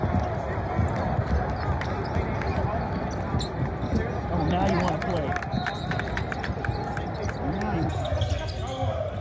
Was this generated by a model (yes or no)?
no